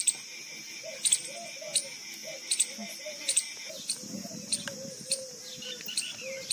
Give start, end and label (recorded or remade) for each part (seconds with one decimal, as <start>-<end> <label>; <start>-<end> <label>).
0.0-6.5 recorded